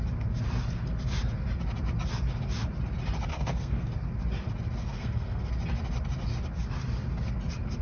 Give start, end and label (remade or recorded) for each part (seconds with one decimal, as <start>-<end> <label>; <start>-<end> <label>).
0.0-3.3 recorded; 3.3-3.9 remade; 3.9-4.8 recorded; 4.8-5.5 remade; 5.5-7.8 recorded